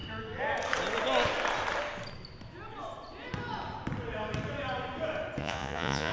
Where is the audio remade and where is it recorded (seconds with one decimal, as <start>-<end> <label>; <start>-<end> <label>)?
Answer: 0.0-5.4 recorded; 5.4-6.1 remade